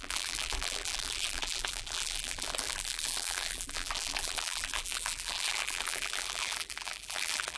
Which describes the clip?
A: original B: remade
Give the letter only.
B